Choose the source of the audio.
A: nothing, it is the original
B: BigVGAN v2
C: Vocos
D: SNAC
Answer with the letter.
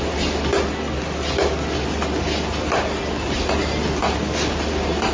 A